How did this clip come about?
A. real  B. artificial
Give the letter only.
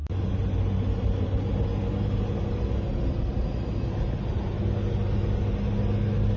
A